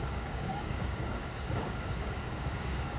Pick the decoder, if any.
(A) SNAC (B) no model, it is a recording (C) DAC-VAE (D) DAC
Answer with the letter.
D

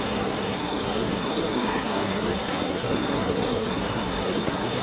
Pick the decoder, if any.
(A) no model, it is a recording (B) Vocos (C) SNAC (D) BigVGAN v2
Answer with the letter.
C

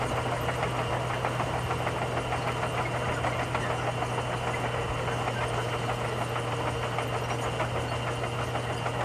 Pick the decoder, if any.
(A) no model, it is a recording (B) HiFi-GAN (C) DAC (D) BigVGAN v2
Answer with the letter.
A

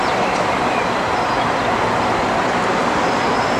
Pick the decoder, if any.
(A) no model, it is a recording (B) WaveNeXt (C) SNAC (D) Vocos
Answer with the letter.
A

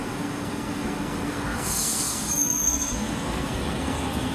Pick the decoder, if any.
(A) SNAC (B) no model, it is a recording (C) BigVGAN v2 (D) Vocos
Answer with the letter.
A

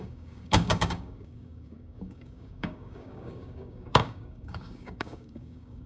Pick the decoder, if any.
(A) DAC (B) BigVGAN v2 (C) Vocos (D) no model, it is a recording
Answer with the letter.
A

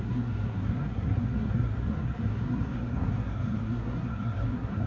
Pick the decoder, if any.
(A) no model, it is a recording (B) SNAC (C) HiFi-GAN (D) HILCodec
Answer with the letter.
B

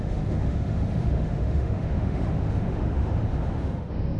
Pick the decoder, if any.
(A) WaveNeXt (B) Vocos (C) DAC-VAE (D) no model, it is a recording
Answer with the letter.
C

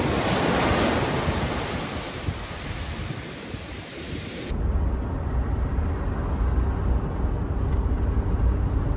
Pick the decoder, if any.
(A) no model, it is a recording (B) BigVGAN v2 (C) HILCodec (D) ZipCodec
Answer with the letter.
A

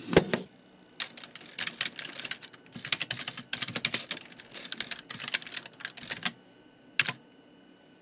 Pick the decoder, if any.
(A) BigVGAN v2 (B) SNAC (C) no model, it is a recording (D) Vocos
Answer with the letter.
C